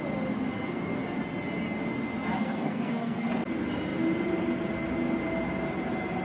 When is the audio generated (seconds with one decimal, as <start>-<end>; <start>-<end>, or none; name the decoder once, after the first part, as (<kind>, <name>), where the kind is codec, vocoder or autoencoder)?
0.5-1.0 (codec, SNAC); 2.3-3.3